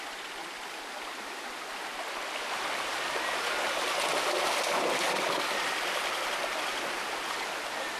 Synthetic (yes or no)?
no